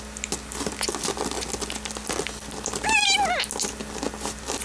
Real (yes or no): yes